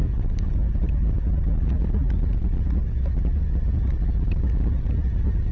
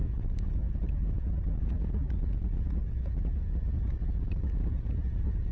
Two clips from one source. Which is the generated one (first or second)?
second